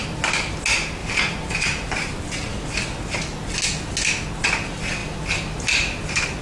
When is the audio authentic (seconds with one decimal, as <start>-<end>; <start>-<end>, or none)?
0.0-1.0; 2.2-6.4